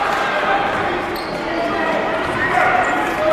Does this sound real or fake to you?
real